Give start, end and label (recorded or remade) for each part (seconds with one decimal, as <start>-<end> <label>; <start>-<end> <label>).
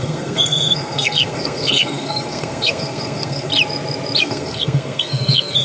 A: 0.0-3.5 remade; 3.5-4.2 recorded; 4.2-5.6 remade